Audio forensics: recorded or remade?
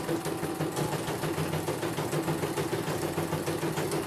recorded